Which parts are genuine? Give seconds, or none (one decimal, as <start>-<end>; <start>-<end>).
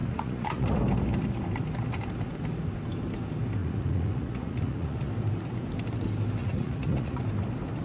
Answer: 0.8-3.6; 5.1-6.4; 7.2-7.8